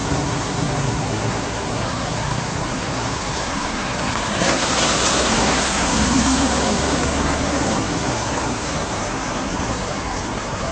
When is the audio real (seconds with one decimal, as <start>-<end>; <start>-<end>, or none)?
none